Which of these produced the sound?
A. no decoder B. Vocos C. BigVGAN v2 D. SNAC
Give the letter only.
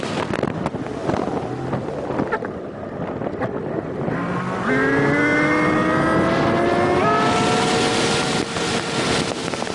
A